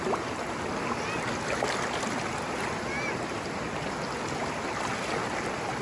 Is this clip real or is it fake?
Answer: real